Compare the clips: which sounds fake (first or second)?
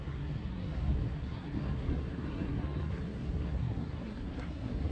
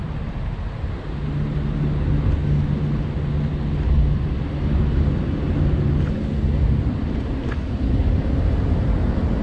first